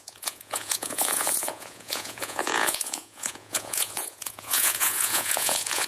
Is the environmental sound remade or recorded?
remade